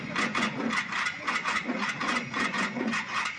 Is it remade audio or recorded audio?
remade